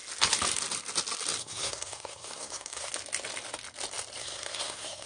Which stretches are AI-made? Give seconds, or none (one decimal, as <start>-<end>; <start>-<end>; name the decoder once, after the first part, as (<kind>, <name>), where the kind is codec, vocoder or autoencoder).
1.4-2.9 (codec, SNAC); 4.2-5.1